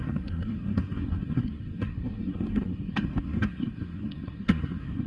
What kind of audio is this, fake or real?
fake